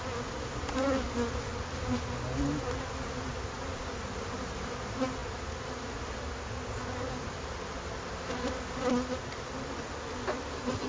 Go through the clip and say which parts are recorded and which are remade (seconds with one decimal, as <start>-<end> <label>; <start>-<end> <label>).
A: 0.0-10.9 recorded

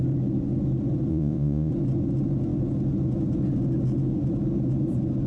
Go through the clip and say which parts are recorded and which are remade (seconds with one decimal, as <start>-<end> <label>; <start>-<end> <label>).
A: 0.0-1.1 recorded; 1.1-1.7 remade; 1.7-5.3 recorded